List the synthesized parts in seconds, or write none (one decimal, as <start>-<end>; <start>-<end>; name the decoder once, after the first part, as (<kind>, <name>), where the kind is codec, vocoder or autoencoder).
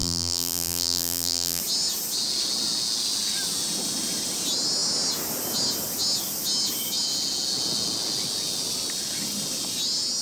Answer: 0.0-1.6 (vocoder, BigVGAN v2)